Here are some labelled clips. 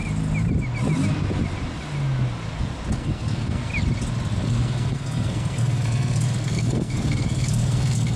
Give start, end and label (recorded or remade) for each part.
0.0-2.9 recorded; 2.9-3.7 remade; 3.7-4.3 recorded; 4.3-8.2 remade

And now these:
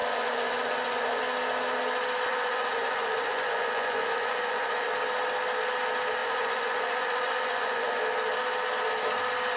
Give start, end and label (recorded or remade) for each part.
0.0-1.2 remade; 1.2-2.3 recorded; 2.3-4.9 remade; 4.9-6.2 recorded; 6.2-8.0 remade; 8.0-9.6 recorded

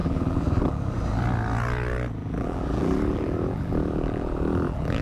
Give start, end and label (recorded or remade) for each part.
0.0-0.8 remade; 0.8-2.2 recorded; 2.2-5.0 remade

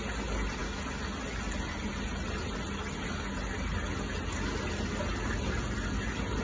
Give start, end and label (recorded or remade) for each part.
0.0-6.4 recorded